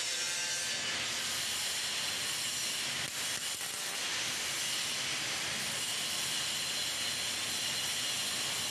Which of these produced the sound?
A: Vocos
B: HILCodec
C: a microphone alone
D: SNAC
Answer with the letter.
C